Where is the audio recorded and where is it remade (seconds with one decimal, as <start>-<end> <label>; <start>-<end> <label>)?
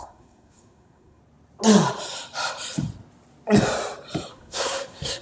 0.0-1.2 remade; 1.2-4.3 recorded; 4.3-5.2 remade